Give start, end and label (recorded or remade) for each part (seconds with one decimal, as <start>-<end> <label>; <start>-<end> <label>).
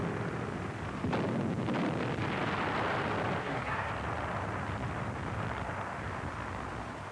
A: 0.0-3.4 recorded; 3.4-3.9 remade; 3.9-7.1 recorded